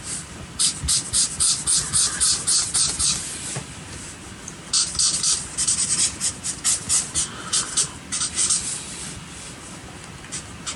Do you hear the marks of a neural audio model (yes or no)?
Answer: no